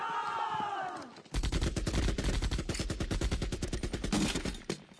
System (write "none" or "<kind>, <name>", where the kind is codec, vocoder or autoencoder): none